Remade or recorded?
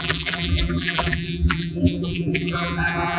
remade